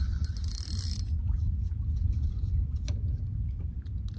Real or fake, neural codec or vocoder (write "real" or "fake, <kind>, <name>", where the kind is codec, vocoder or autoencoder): real